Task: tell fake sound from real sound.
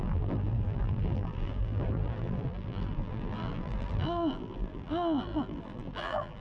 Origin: fake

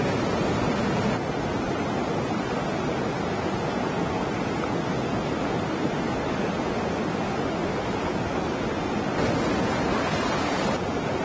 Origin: real